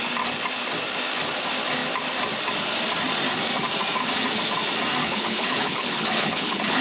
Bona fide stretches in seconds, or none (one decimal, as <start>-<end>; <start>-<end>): 0.0-5.0